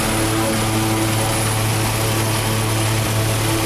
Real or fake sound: real